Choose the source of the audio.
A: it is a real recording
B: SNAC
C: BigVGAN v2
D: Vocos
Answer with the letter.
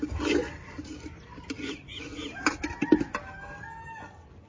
A